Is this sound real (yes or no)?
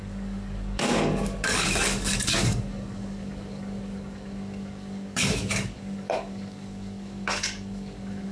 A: no